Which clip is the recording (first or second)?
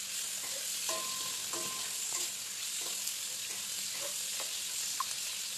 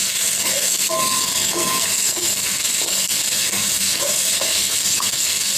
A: first